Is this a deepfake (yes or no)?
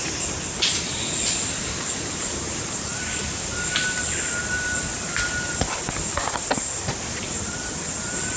no